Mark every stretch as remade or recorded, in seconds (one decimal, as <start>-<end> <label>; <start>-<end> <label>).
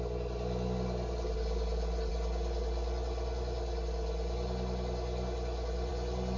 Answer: 0.0-6.4 recorded